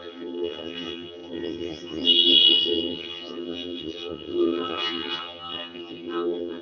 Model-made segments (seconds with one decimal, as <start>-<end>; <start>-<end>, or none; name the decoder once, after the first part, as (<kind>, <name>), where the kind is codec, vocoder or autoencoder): 0.0-6.6 (vocoder, HiFi-GAN)